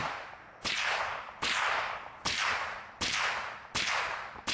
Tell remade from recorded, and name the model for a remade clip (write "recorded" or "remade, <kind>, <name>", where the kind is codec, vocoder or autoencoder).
recorded